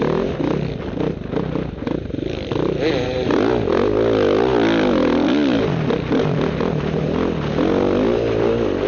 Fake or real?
real